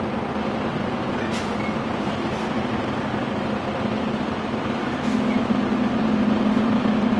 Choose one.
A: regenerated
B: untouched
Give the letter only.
B